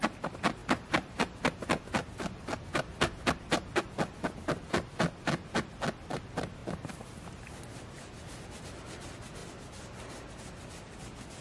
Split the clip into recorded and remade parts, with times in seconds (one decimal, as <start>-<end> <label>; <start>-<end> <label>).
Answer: 0.0-11.4 recorded